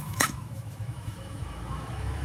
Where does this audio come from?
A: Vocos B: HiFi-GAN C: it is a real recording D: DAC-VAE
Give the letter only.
D